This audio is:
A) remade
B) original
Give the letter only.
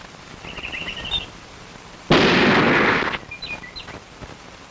B